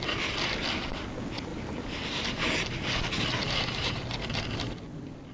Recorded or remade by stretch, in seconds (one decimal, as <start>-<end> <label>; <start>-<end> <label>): 0.0-1.5 recorded; 1.5-4.4 remade; 4.4-5.3 recorded